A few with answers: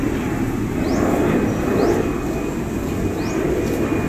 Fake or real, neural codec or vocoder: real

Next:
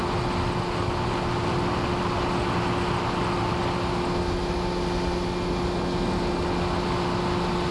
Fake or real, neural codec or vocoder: real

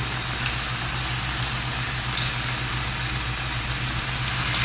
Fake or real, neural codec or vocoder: real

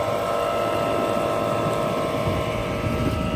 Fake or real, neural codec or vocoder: real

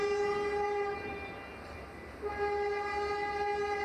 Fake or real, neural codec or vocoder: real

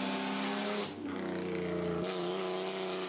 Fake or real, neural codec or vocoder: real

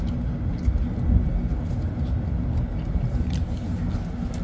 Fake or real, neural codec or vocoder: real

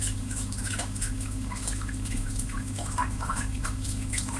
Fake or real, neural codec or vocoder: fake, autoencoder, DAC-VAE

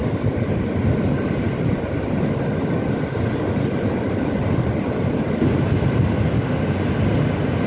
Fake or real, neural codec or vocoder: real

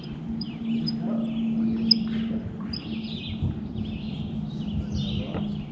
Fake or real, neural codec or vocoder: real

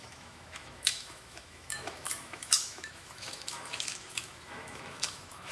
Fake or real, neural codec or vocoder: fake, autoencoder, DAC-VAE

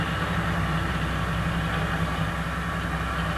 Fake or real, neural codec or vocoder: real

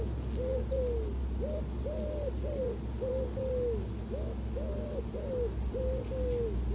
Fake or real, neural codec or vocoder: real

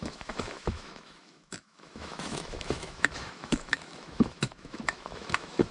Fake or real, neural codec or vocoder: fake, autoencoder, DAC-VAE